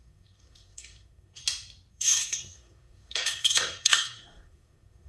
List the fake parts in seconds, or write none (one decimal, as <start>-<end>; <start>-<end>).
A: 0.0-1.4; 1.9-5.1